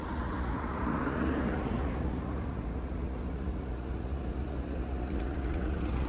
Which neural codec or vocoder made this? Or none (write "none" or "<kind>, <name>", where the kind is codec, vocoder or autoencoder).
vocoder, Vocos